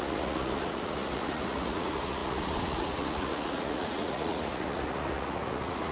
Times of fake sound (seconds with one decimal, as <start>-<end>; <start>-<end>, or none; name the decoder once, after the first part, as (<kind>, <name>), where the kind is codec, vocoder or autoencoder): 0.0-5.9 (vocoder, Vocos)